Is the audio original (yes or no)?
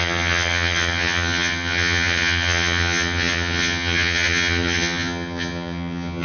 no